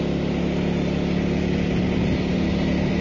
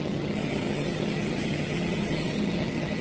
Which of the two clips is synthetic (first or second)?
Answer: second